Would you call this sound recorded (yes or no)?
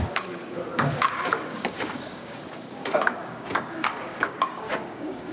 no